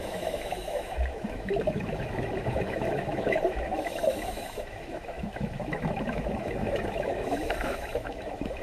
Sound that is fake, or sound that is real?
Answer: fake